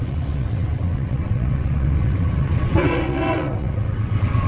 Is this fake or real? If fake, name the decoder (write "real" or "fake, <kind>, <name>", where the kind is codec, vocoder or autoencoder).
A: fake, vocoder, WaveNeXt